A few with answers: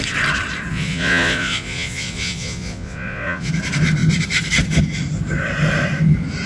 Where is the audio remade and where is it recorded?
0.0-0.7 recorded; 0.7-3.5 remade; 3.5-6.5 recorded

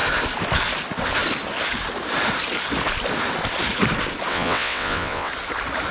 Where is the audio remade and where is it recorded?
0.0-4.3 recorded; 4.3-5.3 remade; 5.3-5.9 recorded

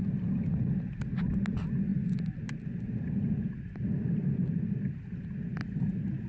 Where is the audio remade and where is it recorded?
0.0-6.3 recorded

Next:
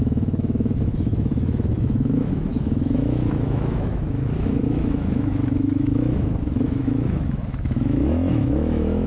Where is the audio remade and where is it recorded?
0.0-9.1 remade

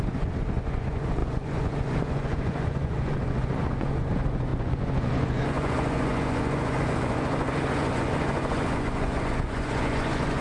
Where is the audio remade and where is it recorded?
0.0-10.4 remade

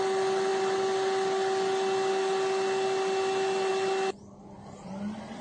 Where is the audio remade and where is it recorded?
0.0-5.4 recorded

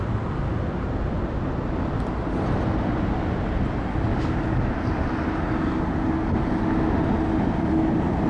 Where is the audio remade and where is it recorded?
0.0-4.1 recorded; 4.1-4.7 remade; 4.7-8.3 recorded